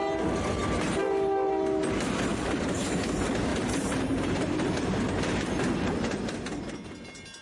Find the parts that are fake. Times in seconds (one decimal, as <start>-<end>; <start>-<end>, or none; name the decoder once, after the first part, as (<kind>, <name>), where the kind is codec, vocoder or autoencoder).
2.3-2.9 (vocoder, BigVGAN v2); 3.5-5.1